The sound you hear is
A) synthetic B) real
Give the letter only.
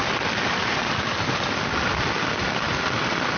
B